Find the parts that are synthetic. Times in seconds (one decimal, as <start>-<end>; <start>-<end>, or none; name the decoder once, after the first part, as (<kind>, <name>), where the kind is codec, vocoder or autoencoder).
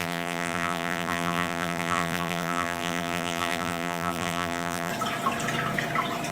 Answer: 0.0-4.9 (vocoder, BigVGAN v2)